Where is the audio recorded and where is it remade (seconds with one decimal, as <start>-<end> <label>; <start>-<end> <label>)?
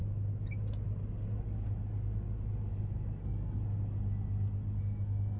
0.0-3.2 recorded; 3.2-3.6 remade; 3.6-4.8 recorded; 4.8-5.4 remade